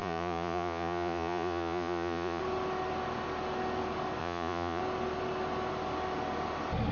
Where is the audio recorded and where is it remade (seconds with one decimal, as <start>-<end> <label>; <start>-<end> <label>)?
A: 0.0-2.4 remade; 2.4-4.2 recorded; 4.2-4.8 remade; 4.8-6.9 recorded